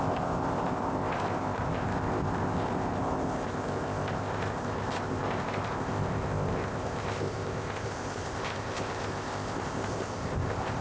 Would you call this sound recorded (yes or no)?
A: no